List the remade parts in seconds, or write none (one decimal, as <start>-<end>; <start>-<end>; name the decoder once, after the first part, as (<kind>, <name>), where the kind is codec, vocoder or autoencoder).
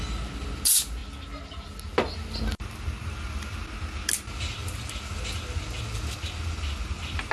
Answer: none